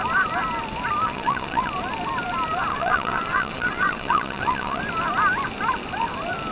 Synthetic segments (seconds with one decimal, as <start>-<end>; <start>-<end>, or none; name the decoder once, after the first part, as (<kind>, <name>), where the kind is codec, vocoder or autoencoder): 1.0-1.7 (vocoder, WaveNeXt); 2.7-4.8